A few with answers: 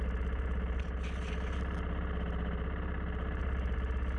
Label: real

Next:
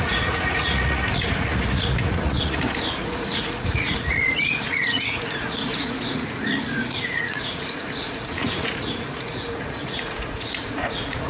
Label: fake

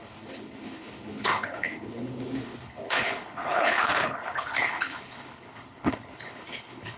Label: fake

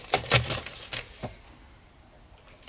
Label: real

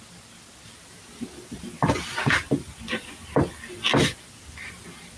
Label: real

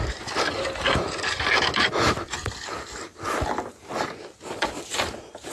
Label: real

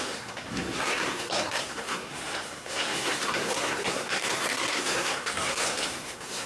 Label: fake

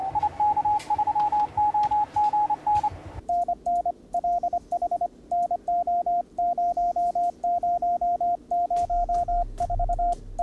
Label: real